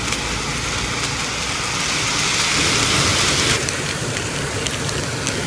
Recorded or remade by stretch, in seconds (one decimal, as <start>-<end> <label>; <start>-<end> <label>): 0.0-3.1 recorded; 3.1-4.5 remade; 4.5-5.5 recorded